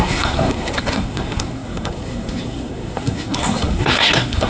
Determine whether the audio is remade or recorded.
remade